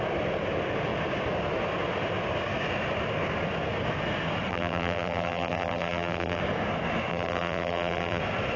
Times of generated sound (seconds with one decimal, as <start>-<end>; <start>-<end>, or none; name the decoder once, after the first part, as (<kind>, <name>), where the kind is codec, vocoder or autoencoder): 4.5-6.4 (vocoder, BigVGAN v2); 7.1-8.2